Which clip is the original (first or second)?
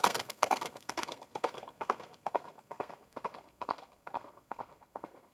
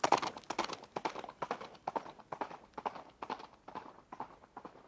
second